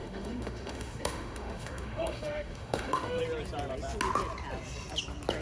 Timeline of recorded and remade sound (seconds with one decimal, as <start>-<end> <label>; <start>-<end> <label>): 0.0-3.2 remade; 3.2-5.4 recorded